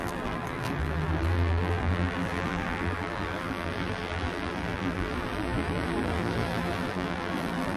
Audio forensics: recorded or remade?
remade